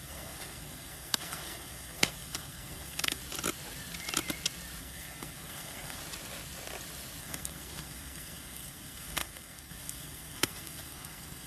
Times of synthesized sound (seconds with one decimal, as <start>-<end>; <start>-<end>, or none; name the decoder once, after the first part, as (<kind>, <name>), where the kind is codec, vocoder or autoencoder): 0.0-3.2 (codec, SNAC); 4.8-6.0; 7.2-11.5